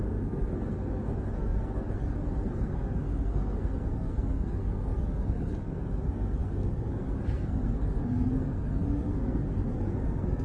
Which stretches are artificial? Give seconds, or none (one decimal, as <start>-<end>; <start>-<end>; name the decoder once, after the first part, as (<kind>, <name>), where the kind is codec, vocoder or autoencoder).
0.0-10.4 (codec, SNAC)